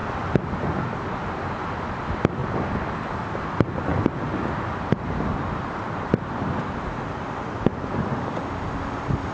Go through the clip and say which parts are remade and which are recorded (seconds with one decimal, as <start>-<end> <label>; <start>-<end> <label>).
0.0-0.7 recorded; 0.7-2.4 remade; 2.4-3.4 recorded; 3.4-3.9 remade; 3.9-7.0 recorded; 7.0-9.3 remade